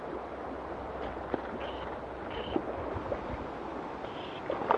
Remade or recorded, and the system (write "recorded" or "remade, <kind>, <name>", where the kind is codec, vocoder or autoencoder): recorded